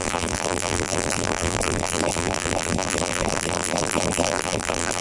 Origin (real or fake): fake